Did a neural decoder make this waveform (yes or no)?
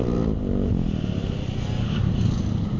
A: no